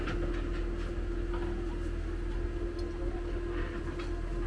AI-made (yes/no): no